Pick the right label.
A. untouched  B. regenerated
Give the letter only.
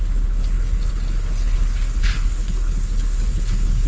B